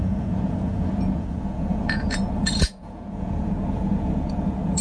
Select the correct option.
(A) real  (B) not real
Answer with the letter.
B